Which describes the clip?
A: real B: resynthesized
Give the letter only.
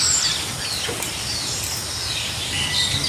A